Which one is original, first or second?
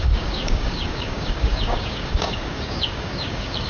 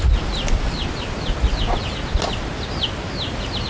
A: second